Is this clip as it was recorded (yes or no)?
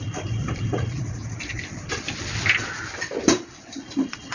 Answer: yes